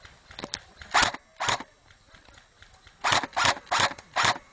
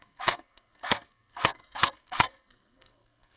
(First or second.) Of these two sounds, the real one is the first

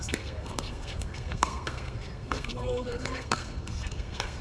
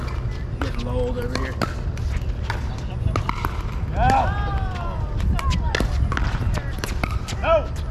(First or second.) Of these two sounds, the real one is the second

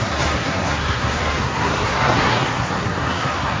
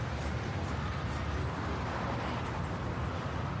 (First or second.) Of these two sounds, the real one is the second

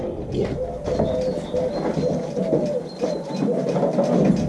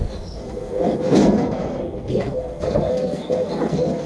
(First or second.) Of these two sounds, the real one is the first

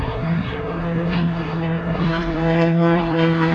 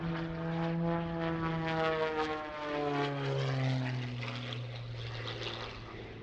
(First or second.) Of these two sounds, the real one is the second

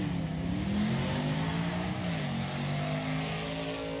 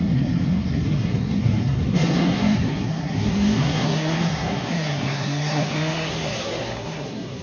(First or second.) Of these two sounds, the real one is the first